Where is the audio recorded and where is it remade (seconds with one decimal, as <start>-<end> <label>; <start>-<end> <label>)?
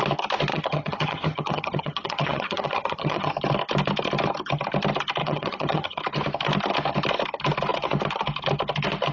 0.0-0.5 recorded; 0.5-3.3 remade; 3.3-5.2 recorded; 5.2-6.0 remade; 6.0-9.1 recorded